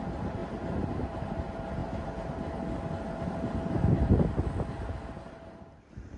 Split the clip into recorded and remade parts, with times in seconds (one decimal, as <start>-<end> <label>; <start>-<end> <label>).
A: 0.0-6.2 recorded